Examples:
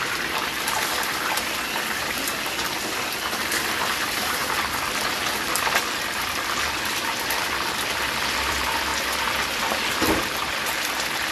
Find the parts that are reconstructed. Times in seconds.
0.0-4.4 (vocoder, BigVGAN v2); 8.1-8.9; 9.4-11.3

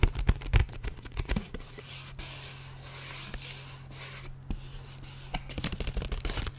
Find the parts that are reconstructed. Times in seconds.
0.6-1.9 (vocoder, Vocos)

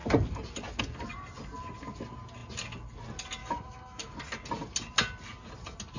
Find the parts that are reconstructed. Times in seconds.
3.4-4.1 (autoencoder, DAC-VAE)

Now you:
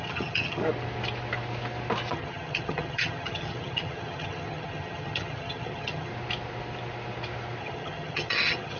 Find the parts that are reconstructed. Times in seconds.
0.0-0.6 (vocoder, HiFi-GAN); 2.1-6.1; 7.6-8.8

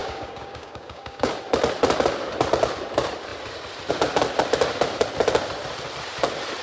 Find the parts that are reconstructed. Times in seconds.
0.0-1.3 (codec, DAC)

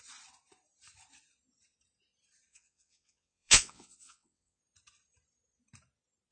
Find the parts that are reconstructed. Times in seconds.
2.5-4.6 (vocoder, WaveNeXt)

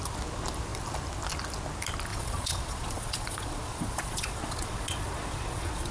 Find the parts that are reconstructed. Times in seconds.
2.1-5.9 (vocoder, Vocos)